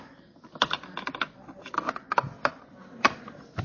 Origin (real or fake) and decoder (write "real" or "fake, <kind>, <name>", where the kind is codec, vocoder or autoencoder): fake, vocoder, BigVGAN v2